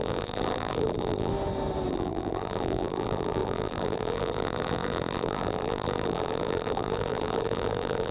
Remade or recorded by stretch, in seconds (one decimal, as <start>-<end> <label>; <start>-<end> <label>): 0.0-1.3 remade; 1.3-1.9 recorded; 1.9-8.1 remade